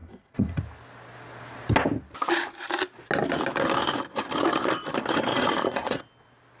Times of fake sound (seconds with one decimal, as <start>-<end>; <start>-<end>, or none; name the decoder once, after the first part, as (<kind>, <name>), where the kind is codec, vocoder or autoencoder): 0.0-0.6 (vocoder, Vocos); 5.3-6.0